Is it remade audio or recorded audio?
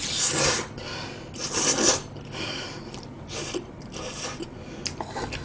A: recorded